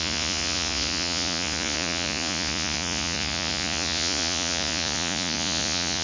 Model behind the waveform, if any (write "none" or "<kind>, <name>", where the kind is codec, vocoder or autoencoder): vocoder, Vocos